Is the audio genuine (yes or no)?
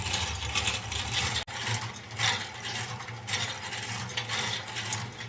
yes